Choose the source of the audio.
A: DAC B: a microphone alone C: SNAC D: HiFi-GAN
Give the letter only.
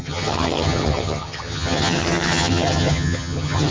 D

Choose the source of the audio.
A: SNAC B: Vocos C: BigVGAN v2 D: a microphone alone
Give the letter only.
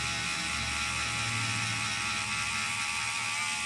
D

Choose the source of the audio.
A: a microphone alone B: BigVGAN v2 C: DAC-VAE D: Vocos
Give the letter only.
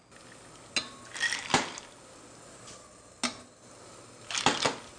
A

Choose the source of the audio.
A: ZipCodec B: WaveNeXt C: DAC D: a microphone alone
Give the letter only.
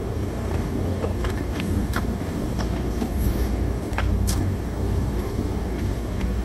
C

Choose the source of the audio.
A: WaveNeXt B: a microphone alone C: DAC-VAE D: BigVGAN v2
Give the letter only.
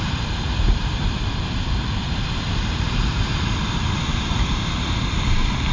D